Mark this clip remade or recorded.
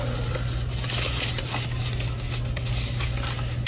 recorded